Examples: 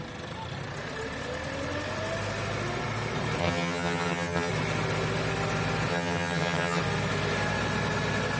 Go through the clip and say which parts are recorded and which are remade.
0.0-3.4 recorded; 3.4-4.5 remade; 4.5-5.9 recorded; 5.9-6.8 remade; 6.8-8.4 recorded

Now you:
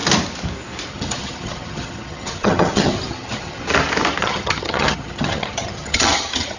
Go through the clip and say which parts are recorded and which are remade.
0.0-0.9 recorded; 0.9-3.6 remade; 3.6-4.2 recorded; 4.2-6.6 remade

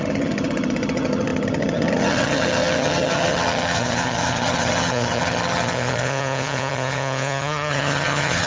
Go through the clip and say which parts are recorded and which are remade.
0.0-8.5 remade